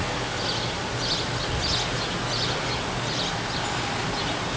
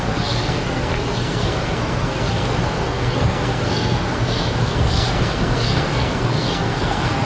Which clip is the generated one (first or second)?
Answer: second